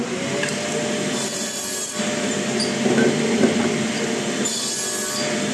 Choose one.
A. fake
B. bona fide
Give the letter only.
B